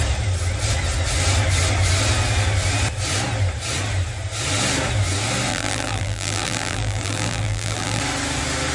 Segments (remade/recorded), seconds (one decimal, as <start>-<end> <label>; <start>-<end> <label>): 0.0-5.5 recorded; 5.5-8.0 remade; 8.0-8.7 recorded